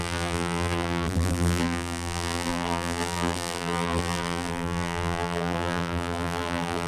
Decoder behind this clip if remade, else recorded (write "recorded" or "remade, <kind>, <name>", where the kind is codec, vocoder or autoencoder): remade, vocoder, BigVGAN v2